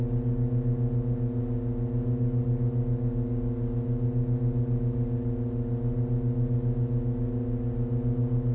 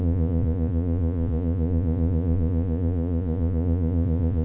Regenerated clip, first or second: second